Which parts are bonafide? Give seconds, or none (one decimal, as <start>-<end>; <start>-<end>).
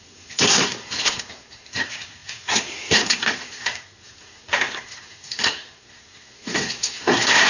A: none